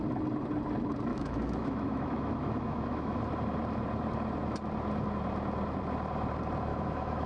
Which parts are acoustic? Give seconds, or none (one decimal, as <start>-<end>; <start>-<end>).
0.0-1.1; 3.2-6.7